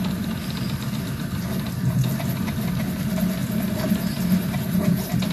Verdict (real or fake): fake